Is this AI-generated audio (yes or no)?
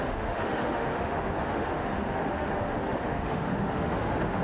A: yes